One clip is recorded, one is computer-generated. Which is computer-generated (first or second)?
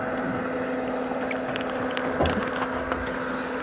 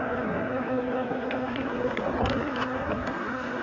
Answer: second